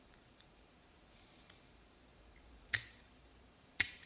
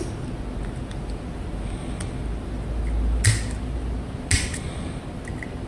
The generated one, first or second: first